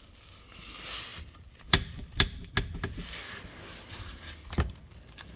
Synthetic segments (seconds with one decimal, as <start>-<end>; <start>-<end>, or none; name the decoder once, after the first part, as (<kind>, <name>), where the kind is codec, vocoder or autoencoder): none